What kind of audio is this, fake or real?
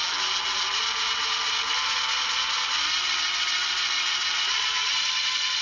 real